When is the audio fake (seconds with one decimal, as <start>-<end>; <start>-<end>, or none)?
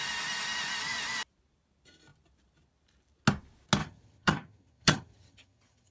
3.8-5.9